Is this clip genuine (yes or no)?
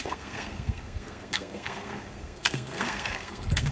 no